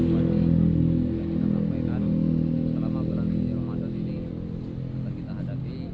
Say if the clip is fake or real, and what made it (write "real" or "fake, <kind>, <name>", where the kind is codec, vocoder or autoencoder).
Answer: real